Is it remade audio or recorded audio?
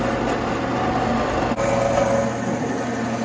recorded